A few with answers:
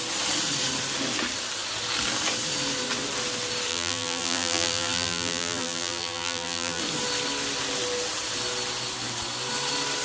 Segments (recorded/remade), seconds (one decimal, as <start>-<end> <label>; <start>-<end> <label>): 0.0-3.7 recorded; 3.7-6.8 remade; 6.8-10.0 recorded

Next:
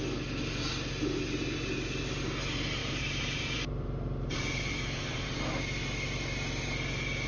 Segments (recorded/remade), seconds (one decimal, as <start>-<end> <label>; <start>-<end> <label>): 0.0-2.8 recorded; 2.8-5.5 remade; 5.5-7.3 recorded

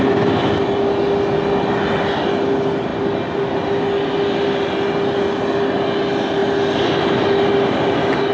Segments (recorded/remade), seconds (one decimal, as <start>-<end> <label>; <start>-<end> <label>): 0.0-8.3 recorded

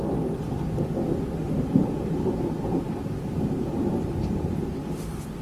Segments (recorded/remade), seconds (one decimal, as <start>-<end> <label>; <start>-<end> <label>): 0.0-1.4 recorded; 1.4-4.6 remade; 4.6-5.4 recorded

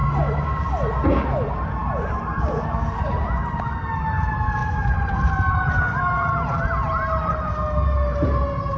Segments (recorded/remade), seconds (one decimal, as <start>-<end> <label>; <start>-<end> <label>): 0.0-4.6 recorded; 4.6-6.3 remade; 6.3-6.8 recorded; 6.8-8.3 remade; 8.3-8.8 recorded